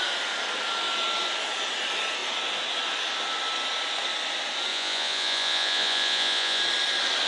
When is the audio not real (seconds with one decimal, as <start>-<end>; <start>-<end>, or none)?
4.7-6.6